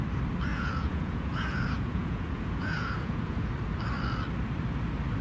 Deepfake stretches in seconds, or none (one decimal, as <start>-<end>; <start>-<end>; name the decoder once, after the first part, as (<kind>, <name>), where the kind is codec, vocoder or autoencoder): 0.5-3.5 (vocoder, Vocos)